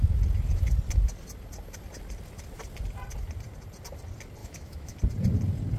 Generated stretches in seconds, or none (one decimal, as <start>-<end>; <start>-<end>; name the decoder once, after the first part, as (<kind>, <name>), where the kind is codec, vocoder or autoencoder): 4.4-5.0 (autoencoder, DAC-VAE)